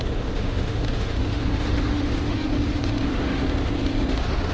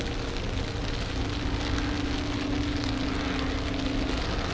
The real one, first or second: second